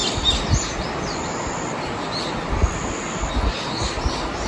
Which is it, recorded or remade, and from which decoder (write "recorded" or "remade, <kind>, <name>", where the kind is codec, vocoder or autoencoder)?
recorded